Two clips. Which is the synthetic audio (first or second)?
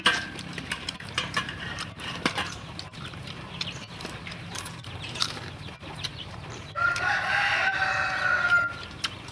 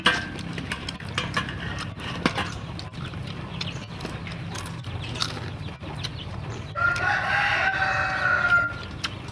first